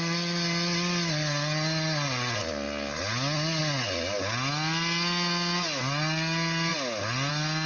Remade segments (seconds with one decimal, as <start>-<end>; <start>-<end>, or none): none